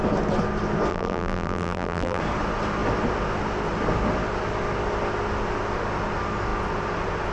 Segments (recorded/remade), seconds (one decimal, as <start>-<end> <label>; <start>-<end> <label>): 0.0-0.9 recorded; 0.9-2.2 remade; 2.2-7.3 recorded

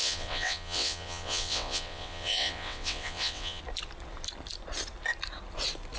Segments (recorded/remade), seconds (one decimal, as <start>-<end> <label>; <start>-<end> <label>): 0.0-3.6 remade; 3.6-6.0 recorded

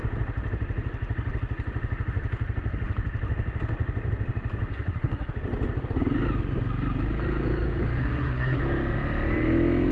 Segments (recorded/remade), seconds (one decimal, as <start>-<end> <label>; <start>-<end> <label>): 0.0-4.7 recorded; 4.7-5.3 remade; 5.3-8.0 recorded; 8.0-8.6 remade; 8.6-9.9 recorded

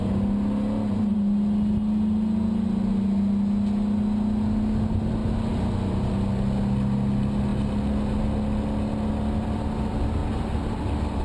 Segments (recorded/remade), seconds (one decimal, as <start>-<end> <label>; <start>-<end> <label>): 0.0-5.2 recorded; 5.2-6.1 remade; 6.1-10.2 recorded; 10.2-11.2 remade